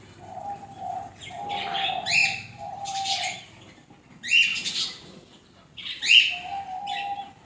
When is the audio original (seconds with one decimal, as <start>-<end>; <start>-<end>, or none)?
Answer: 0.0-7.5